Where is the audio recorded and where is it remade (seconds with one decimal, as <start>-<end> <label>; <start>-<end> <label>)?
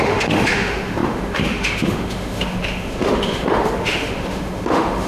0.0-5.1 remade